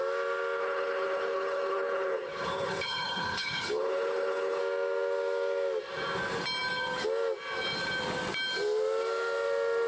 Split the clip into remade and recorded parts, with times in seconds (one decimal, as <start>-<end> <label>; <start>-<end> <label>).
0.0-0.6 recorded; 0.6-4.6 remade; 4.6-9.9 recorded